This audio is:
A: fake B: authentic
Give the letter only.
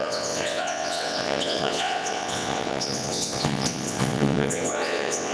A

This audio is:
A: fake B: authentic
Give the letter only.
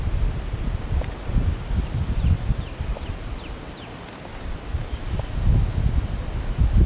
B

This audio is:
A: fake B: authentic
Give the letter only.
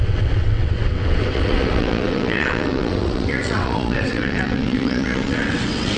A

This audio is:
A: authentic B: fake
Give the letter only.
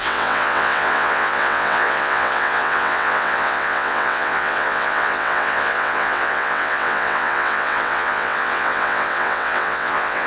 B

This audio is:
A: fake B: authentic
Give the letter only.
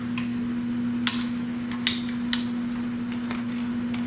B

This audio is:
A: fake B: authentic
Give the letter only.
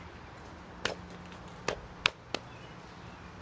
B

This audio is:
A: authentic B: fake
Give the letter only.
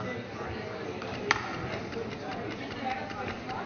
A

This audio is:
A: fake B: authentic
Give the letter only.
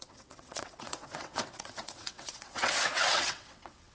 A